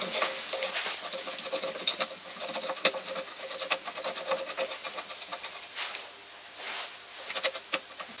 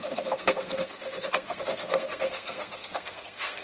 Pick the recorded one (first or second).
first